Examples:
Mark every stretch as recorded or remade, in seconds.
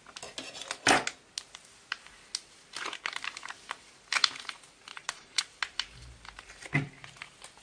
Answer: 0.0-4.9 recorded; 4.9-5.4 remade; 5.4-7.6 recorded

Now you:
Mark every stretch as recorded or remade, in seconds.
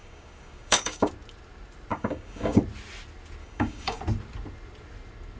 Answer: 0.0-1.1 remade; 1.1-1.9 recorded; 1.9-2.6 remade; 2.6-3.4 recorded; 3.4-4.0 remade; 4.0-5.4 recorded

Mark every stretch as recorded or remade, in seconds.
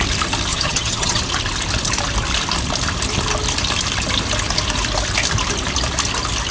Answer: 0.0-0.5 recorded; 0.5-1.2 remade; 1.2-6.5 recorded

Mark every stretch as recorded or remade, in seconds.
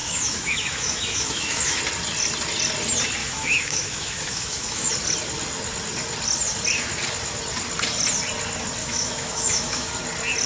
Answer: 0.0-1.8 remade; 1.8-3.2 recorded; 3.2-4.9 remade; 4.9-8.8 recorded; 8.8-9.9 remade; 9.9-10.5 recorded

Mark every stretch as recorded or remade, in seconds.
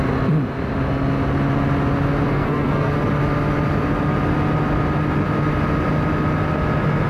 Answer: 0.0-2.3 recorded; 2.3-2.9 remade; 2.9-7.1 recorded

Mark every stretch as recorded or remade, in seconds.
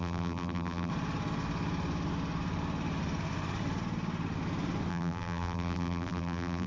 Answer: 0.0-0.9 remade; 0.9-4.9 recorded; 4.9-6.7 remade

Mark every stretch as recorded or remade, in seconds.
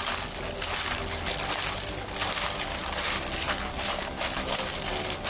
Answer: 0.0-5.3 recorded